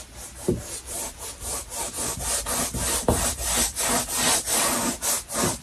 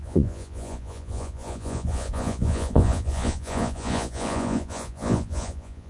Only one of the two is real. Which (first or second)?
first